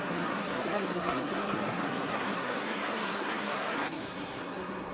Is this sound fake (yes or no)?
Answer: yes